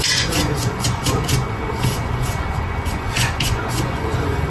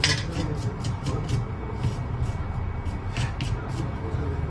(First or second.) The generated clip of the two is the first